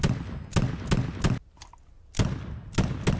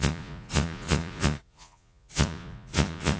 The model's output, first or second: second